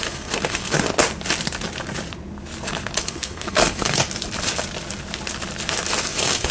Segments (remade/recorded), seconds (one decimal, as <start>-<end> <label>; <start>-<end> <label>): 0.0-0.8 remade; 0.8-3.0 recorded; 3.0-4.0 remade; 4.0-6.1 recorded; 6.1-6.5 remade